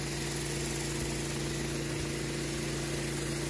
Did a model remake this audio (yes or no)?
no